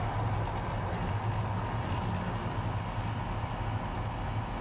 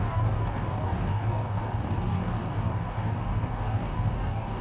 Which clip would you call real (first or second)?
first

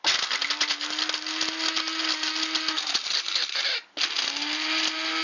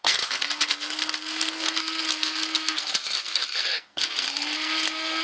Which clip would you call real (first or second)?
first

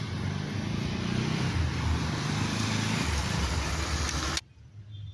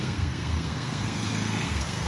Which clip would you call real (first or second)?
first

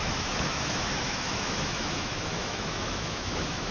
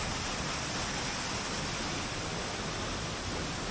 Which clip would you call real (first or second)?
second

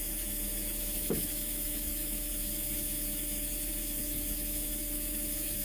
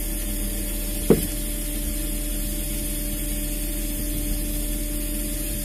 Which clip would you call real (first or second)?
second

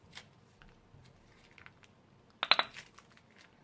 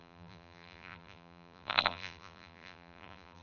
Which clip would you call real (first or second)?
first